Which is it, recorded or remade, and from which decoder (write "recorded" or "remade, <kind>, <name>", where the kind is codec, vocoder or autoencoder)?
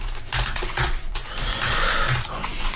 remade, vocoder, Vocos